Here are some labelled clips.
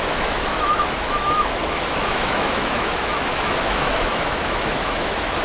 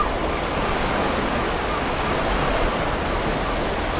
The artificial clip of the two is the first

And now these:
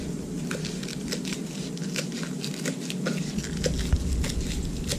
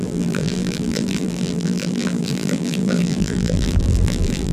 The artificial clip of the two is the second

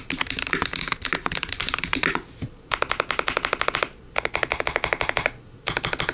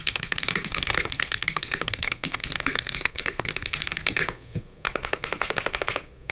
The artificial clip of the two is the second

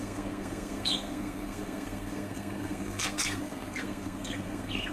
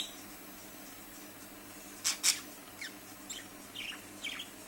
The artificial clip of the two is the first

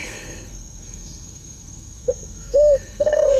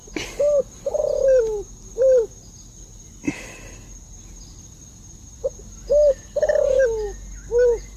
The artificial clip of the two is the first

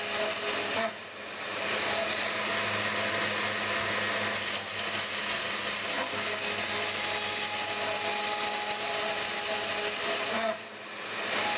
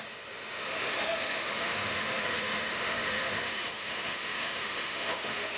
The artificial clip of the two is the second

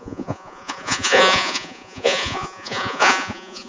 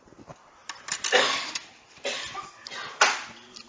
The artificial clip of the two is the first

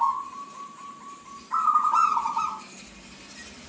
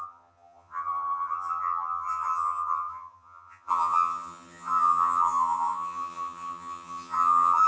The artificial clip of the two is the second